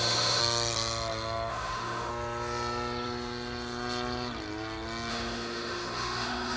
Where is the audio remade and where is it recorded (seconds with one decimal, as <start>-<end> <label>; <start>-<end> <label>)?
0.0-0.4 remade; 0.4-1.5 recorded; 1.5-2.1 remade; 2.1-5.1 recorded; 5.1-6.6 remade